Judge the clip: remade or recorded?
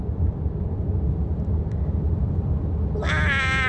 recorded